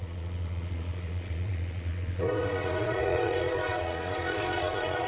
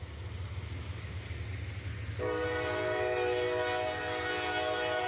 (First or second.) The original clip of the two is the second